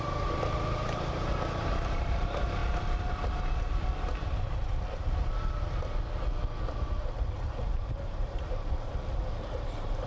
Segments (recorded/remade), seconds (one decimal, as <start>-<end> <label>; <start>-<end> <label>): 0.0-2.6 remade; 2.6-6.4 recorded; 6.4-10.1 remade